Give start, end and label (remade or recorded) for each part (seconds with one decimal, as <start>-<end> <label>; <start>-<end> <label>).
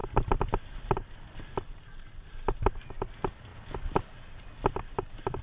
0.0-5.4 recorded